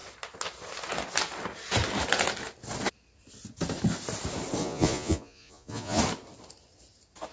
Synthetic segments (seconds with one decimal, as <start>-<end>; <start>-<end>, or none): 4.6-6.0